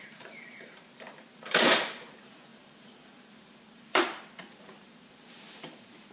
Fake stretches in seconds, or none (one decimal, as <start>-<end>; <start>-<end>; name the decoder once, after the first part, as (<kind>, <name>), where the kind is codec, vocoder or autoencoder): 0.0-6.1 (vocoder, BigVGAN v2)